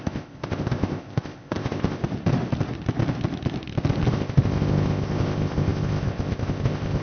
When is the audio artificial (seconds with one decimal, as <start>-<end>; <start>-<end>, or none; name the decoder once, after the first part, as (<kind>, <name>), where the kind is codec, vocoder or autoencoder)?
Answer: 0.0-2.0 (codec, ZipCodec); 4.1-7.0